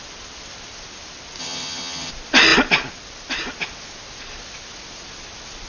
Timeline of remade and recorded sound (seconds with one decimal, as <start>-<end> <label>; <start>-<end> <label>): 0.0-1.4 recorded; 1.4-2.1 remade; 2.1-5.7 recorded